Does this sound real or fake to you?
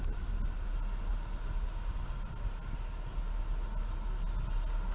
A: real